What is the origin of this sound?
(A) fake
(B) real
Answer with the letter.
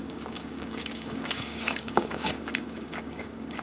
A